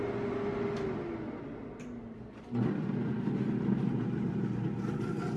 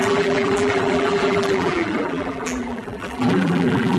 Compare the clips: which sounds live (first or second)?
first